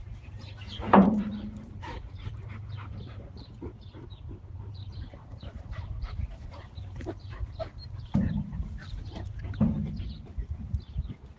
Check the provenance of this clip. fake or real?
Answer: fake